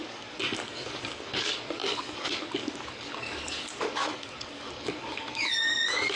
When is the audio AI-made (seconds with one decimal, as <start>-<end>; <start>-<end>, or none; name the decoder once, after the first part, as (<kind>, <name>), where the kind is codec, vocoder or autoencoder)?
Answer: 0.0-6.2 (codec, DAC)